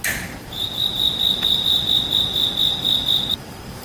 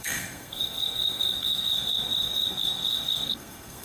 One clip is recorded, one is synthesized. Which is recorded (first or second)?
first